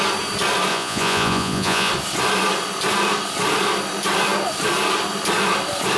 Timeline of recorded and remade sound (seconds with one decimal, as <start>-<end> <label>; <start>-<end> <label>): 0.0-0.7 recorded; 0.7-1.9 remade; 1.9-6.0 recorded